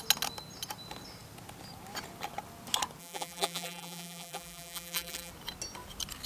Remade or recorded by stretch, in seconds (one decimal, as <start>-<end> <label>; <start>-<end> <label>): 0.0-3.0 recorded; 3.0-5.3 remade; 5.3-6.3 recorded